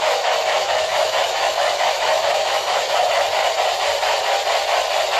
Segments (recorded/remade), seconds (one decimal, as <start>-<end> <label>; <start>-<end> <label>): 0.0-3.4 remade; 3.4-5.2 recorded